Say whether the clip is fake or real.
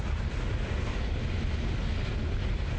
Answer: real